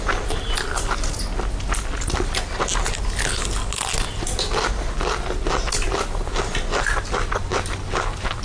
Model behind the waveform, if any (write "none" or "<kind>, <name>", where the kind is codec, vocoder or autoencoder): none